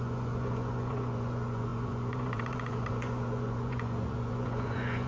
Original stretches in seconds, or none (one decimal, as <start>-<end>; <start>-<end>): none